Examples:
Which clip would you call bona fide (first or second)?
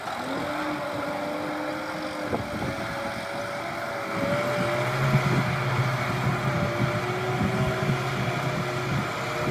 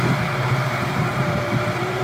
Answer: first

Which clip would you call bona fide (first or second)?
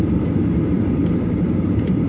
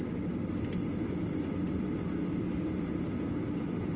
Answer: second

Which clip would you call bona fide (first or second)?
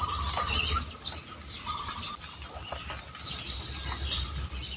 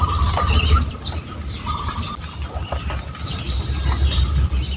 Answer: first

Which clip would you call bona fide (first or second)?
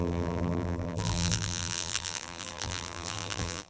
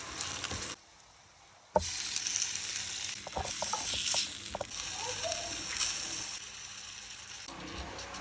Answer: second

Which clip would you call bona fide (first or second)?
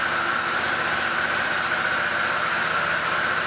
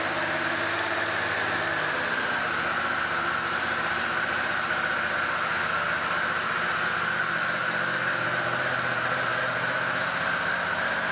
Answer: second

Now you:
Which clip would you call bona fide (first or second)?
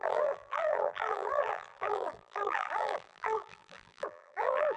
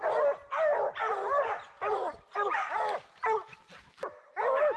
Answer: second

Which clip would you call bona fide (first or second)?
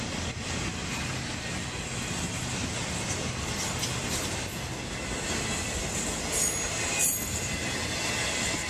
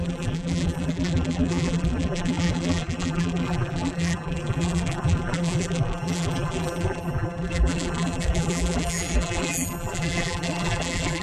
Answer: first